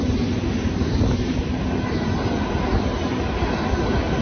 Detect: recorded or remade recorded